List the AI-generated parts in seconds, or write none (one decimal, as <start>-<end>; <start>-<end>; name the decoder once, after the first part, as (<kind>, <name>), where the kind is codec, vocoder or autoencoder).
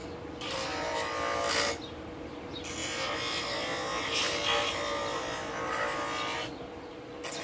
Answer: none